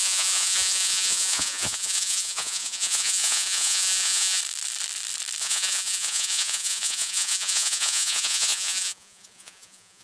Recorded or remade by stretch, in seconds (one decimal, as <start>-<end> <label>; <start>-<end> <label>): 0.0-4.4 remade; 4.4-5.4 recorded; 5.4-10.0 remade